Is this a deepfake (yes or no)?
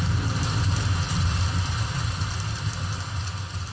no